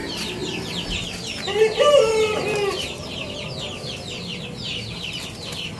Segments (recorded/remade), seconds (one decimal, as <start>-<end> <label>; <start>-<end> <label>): 0.0-5.8 recorded